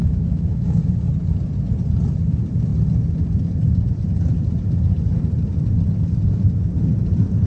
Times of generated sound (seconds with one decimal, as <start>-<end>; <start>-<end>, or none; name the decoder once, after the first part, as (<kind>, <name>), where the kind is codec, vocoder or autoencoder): 0.0-0.8 (autoencoder, DAC-VAE)